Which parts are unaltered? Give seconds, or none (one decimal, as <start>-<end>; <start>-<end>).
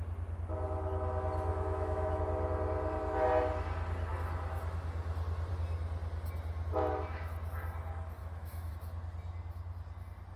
0.0-1.5; 2.2-8.2; 8.7-10.4